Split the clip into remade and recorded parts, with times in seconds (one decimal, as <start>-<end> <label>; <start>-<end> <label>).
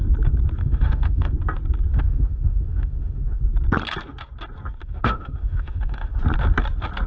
0.0-0.6 recorded; 0.6-1.3 remade; 1.3-1.9 recorded; 1.9-3.4 remade; 3.4-4.8 recorded; 4.8-6.2 remade; 6.2-7.1 recorded